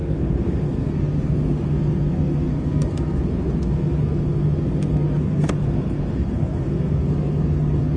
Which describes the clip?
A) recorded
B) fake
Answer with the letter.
B